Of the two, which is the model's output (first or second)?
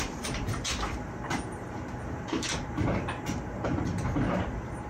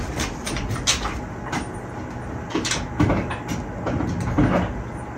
first